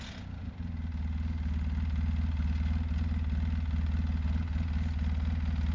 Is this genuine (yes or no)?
yes